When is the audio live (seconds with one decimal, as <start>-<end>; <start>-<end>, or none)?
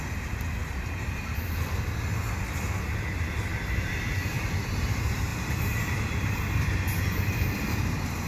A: 0.0-0.6; 1.5-3.5; 4.7-5.3; 6.8-8.3